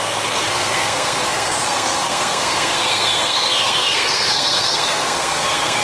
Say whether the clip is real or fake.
fake